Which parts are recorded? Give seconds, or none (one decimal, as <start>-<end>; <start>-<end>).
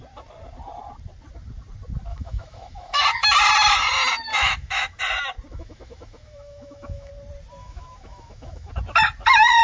0.0-2.1; 3.0-4.3; 5.0-5.5; 7.1-7.6; 8.7-9.6